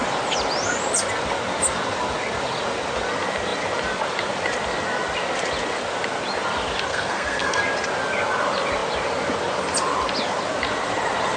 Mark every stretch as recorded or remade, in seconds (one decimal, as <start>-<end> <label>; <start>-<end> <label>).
0.0-6.9 recorded; 6.9-7.6 remade; 7.6-11.4 recorded